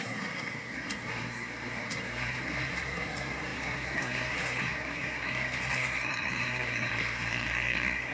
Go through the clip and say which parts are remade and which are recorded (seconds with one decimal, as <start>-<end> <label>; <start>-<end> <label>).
0.0-8.1 remade